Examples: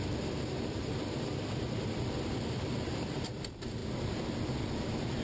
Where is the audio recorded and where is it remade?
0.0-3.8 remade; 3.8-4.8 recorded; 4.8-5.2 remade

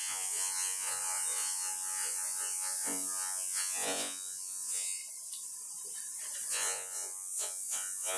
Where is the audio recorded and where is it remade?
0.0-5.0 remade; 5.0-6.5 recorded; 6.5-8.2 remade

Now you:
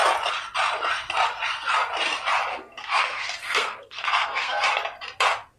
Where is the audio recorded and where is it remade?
0.0-2.5 recorded; 2.5-4.6 remade; 4.6-5.6 recorded